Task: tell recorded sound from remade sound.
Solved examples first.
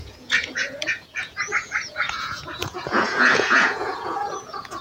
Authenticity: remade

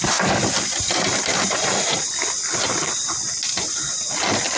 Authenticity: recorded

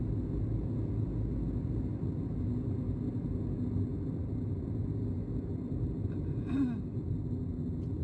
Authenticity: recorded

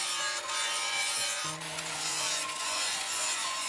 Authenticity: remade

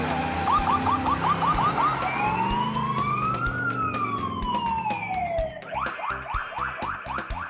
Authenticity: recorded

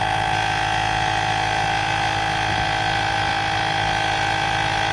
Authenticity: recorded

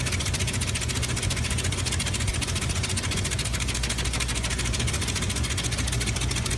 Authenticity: remade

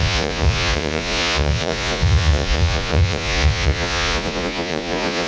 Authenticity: remade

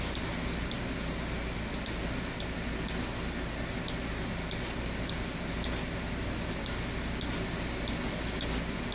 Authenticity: recorded